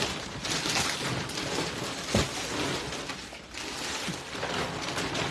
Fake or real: real